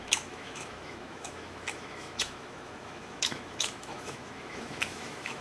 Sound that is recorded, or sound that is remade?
remade